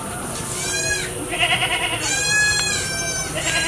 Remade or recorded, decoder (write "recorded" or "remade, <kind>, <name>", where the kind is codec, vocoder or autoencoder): recorded